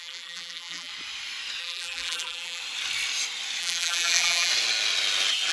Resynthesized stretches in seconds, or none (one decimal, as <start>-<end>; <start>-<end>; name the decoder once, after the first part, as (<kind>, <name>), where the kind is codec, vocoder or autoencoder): 0.0-0.9 (vocoder, BigVGAN v2); 1.6-2.6; 3.6-4.5